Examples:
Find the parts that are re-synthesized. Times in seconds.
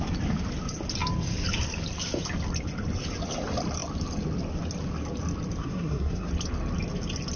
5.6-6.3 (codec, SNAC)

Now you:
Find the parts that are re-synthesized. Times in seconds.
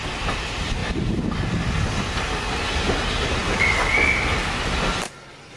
none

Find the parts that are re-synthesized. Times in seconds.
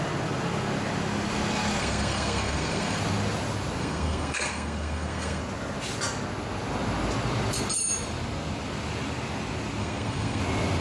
1.8-3.0 (codec, SNAC); 3.8-5.4; 9.8-10.4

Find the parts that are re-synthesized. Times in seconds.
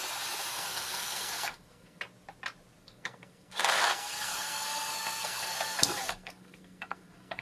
0.5-2.0 (codec, SNAC); 2.8-7.4